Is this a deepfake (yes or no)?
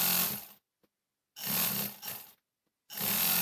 no